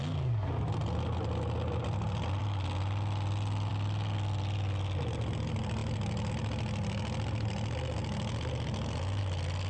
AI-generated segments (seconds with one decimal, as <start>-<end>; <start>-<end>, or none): none